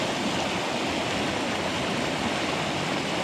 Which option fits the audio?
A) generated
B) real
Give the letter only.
B